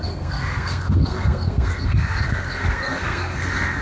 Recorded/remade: remade